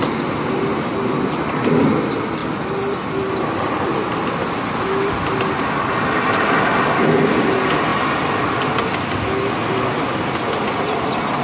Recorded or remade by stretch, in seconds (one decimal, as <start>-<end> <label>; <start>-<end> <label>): 0.0-11.4 recorded